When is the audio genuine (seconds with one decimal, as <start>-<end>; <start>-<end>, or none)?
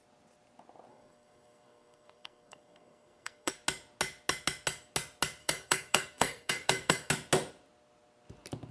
0.0-0.9; 3.5-5.4; 7.1-8.7